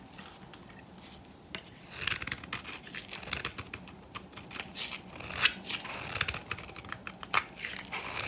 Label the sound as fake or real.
real